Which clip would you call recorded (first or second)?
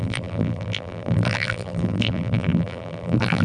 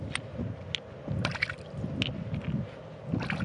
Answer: second